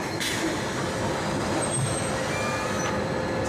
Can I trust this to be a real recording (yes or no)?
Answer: yes